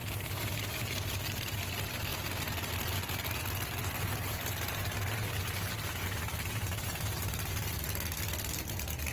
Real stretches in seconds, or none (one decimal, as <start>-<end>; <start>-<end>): 1.6-3.8; 7.8-9.1